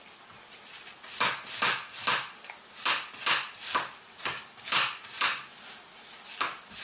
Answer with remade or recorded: recorded